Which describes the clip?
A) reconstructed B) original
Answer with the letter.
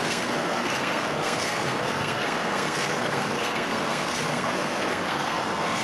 A